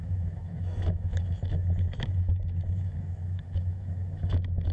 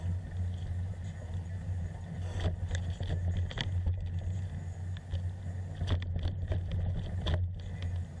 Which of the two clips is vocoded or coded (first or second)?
first